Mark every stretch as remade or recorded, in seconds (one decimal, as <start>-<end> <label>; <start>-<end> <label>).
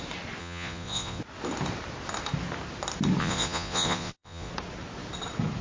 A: 0.0-0.4 recorded; 0.4-1.2 remade; 1.2-3.2 recorded; 3.2-4.5 remade; 4.5-5.6 recorded